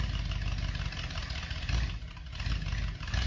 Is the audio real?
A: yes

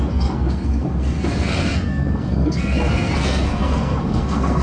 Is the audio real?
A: no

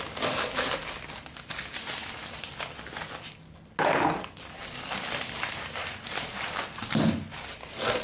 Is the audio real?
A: yes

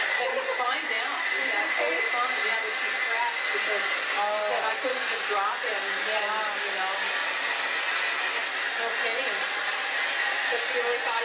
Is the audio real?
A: yes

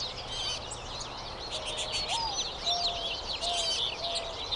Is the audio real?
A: yes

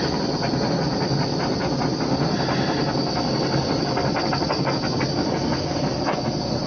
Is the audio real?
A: yes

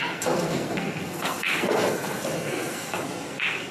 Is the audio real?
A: no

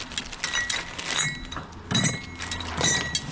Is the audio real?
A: yes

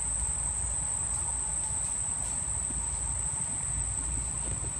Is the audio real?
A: yes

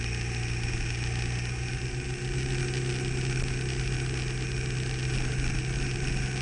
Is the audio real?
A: yes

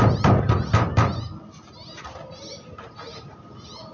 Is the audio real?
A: yes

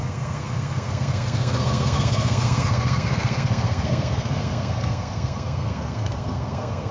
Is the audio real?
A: no